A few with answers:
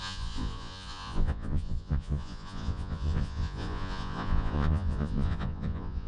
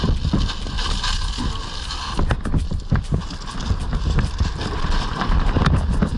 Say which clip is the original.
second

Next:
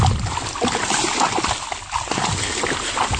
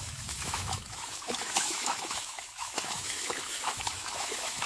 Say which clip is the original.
first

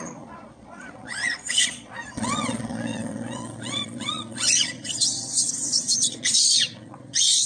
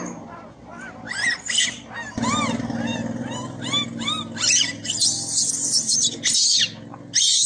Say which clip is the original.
second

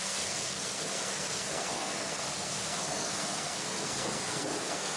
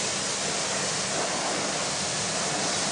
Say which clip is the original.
second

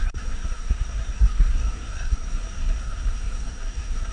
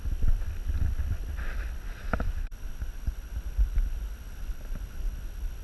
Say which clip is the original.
second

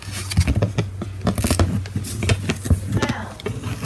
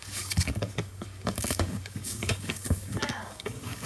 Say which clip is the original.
first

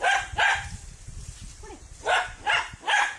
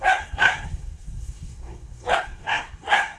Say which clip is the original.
first